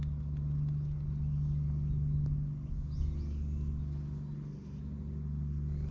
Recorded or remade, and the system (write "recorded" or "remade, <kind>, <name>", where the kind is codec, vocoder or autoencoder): recorded